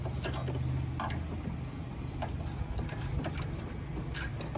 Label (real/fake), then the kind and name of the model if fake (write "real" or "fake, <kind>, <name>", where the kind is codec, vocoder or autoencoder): real